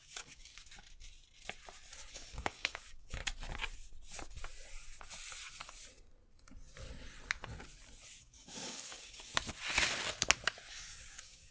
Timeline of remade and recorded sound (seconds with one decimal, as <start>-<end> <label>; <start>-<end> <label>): 0.0-0.5 remade; 0.5-2.1 recorded; 2.1-3.2 remade; 3.2-8.2 recorded; 8.2-9.3 remade; 9.3-10.7 recorded; 10.7-11.5 remade